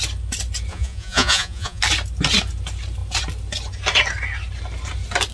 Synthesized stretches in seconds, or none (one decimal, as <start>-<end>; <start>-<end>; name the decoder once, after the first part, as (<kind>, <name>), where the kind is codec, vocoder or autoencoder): 0.7-1.8 (vocoder, Vocos)

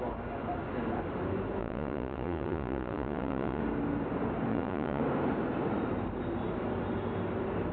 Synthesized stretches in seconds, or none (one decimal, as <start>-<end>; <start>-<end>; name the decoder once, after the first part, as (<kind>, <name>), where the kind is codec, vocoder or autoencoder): 1.6-3.6 (vocoder, Vocos); 4.5-5.0

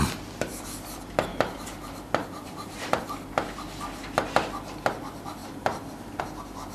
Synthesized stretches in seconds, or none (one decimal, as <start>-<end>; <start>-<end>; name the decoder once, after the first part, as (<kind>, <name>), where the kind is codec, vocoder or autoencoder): 1.3-3.0 (vocoder, BigVGAN v2); 5.4-6.2

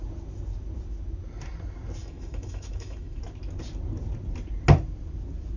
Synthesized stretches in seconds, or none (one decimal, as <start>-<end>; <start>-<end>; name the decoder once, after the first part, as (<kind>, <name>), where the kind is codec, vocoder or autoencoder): 2.0-3.2 (autoencoder, DAC-VAE)

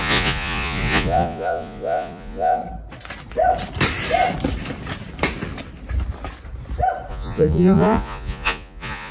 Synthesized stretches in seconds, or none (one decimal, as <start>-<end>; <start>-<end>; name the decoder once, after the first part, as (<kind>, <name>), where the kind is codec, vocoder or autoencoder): 0.0-2.6 (vocoder, Vocos); 7.1-9.1

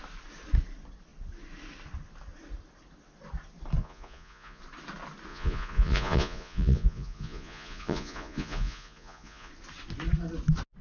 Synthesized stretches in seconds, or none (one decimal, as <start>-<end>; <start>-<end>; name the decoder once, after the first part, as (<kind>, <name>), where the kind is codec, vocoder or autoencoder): 3.8-4.6 (vocoder, Vocos); 5.3-9.5

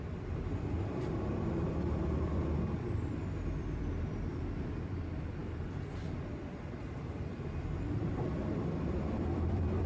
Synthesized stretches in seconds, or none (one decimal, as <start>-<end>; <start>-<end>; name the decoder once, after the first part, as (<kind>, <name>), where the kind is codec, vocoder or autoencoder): 0.0-9.9 (vocoder, BigVGAN v2)